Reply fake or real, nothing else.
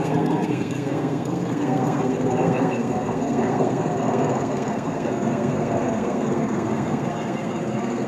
fake